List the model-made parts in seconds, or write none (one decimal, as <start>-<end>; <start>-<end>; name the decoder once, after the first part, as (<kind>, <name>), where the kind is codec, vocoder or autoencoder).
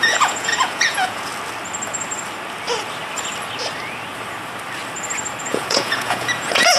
0.0-1.3 (vocoder, Vocos); 5.4-6.8